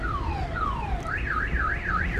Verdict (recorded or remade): recorded